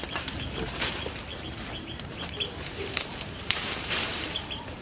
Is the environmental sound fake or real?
fake